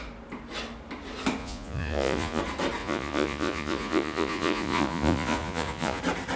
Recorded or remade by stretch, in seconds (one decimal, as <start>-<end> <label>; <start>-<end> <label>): 0.0-1.4 recorded; 1.4-2.4 remade; 2.4-2.8 recorded; 2.8-6.0 remade; 6.0-6.4 recorded